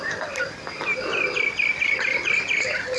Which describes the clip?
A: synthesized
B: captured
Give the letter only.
B